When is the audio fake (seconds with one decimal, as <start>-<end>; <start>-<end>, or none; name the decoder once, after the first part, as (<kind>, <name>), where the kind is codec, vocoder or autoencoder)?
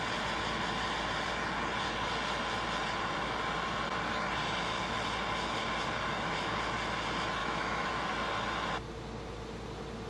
7.4-7.9 (autoencoder, DAC-VAE)